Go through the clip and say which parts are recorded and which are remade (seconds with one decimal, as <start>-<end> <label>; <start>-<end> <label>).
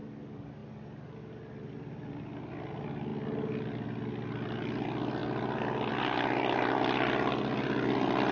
0.0-8.3 recorded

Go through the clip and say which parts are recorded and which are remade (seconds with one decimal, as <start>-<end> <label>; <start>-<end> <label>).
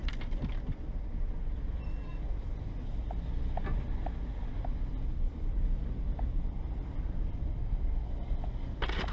0.0-5.8 recorded; 5.8-7.7 remade; 7.7-9.1 recorded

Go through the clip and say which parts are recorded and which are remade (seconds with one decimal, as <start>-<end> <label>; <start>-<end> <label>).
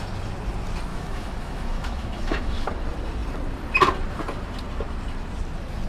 0.0-0.9 recorded; 0.9-2.6 remade; 2.6-5.9 recorded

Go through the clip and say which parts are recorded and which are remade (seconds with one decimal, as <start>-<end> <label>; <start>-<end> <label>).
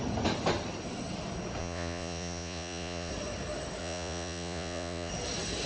0.0-1.6 recorded; 1.6-3.1 remade; 3.1-3.8 recorded; 3.8-5.1 remade; 5.1-5.7 recorded